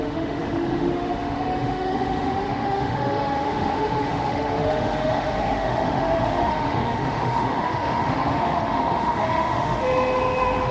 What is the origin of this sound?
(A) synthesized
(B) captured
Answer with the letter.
A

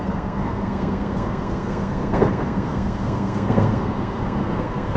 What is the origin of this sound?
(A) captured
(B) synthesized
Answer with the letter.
B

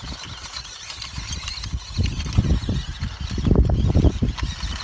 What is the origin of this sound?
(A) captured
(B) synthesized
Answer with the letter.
A